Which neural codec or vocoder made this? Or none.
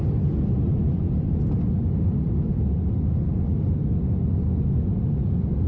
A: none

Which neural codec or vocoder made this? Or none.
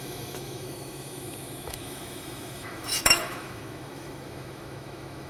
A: autoencoder, DAC-VAE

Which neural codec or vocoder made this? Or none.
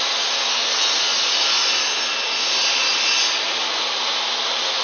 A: none